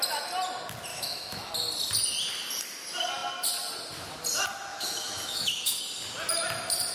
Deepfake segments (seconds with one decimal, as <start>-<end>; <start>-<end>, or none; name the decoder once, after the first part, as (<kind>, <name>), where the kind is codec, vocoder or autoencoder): 0.9-1.5 (autoencoder, DAC-VAE); 4.7-5.8